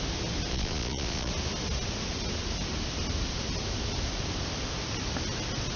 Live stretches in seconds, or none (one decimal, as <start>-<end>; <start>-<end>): 0.0-0.5; 1.3-5.8